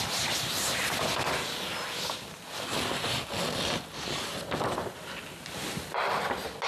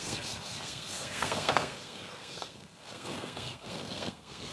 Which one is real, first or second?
first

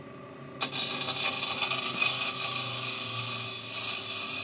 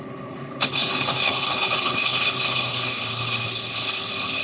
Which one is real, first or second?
first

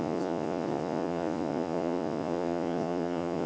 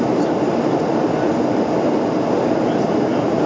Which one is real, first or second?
second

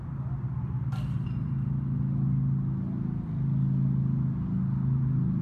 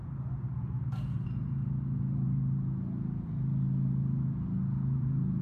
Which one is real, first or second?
first